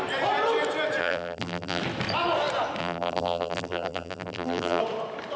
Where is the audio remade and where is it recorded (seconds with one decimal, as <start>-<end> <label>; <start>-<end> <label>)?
0.0-1.0 recorded; 1.0-1.8 remade; 1.8-2.8 recorded; 2.8-4.8 remade; 4.8-5.4 recorded